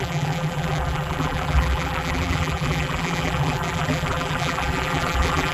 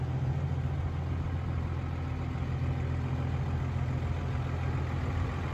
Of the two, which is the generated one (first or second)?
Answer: first